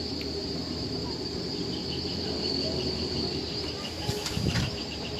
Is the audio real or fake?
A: fake